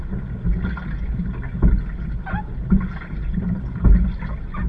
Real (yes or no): yes